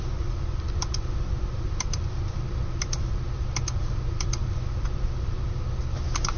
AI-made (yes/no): yes